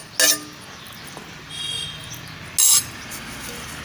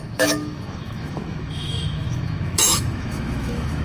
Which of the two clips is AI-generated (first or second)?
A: second